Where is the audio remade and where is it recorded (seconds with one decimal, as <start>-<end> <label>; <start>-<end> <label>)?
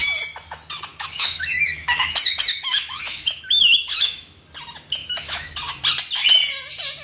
0.0-0.9 recorded; 0.9-4.4 remade; 4.4-5.0 recorded; 5.0-5.5 remade; 5.5-7.0 recorded